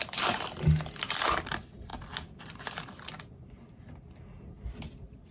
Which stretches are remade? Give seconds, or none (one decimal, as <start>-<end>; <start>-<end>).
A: none

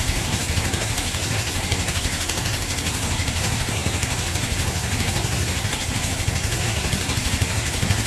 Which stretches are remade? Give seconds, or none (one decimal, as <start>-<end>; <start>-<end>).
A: 0.0-8.1

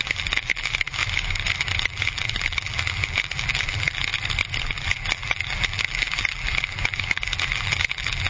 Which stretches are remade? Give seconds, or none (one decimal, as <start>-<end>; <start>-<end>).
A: 0.0-1.0; 1.6-4.1; 4.6-8.3

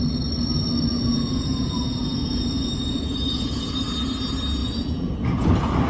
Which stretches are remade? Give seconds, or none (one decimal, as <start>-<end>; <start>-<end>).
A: 0.9-3.8; 4.6-5.5